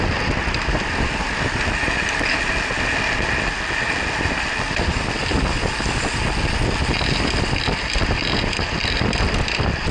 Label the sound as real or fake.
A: real